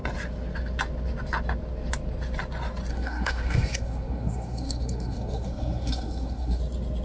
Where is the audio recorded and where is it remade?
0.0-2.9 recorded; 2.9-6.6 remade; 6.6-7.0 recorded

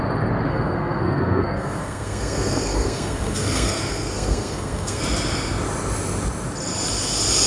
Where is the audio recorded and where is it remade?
0.0-0.5 recorded; 0.5-5.0 remade; 5.0-7.5 recorded

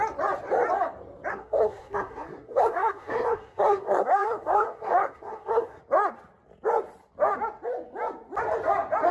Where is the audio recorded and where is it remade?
0.0-1.3 recorded; 1.3-5.8 remade; 5.8-9.1 recorded

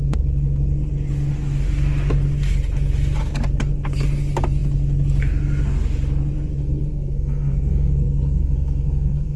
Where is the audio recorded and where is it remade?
0.0-6.6 recorded; 6.6-9.4 remade

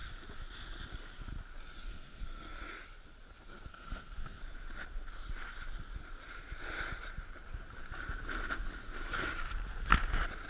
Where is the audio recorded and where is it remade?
0.0-1.9 recorded; 1.9-2.5 remade; 2.5-3.7 recorded; 3.7-4.4 remade; 4.4-10.5 recorded

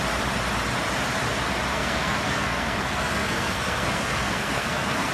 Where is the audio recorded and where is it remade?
0.0-1.7 recorded; 1.7-5.1 remade